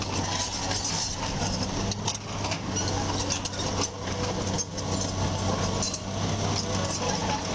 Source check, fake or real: real